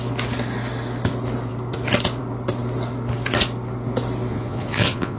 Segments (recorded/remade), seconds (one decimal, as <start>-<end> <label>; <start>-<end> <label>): 0.0-4.3 recorded; 4.3-5.2 remade